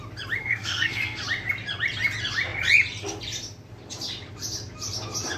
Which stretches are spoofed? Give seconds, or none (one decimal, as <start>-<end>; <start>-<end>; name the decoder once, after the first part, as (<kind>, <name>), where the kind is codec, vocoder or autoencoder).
0.4-1.2 (codec, SNAC)